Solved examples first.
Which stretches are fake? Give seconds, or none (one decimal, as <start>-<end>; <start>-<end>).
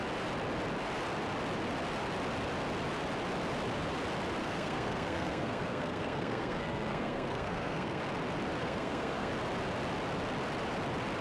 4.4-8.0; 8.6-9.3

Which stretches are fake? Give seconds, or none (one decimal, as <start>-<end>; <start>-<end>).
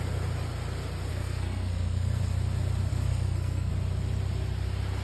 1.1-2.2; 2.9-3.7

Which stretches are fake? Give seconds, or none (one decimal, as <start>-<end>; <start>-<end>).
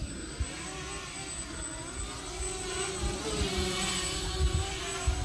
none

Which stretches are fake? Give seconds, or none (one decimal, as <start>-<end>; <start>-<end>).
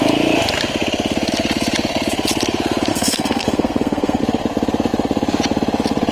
2.9-4.2